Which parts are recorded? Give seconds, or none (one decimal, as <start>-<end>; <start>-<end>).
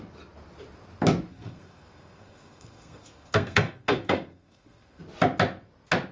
0.0-1.3; 5.0-6.1